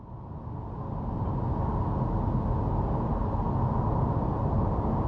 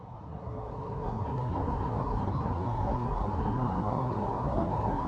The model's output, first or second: second